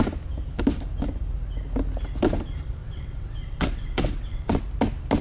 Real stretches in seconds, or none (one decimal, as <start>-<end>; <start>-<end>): 0.0-2.8; 4.6-5.2